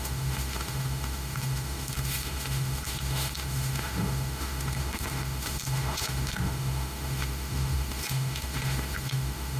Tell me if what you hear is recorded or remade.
remade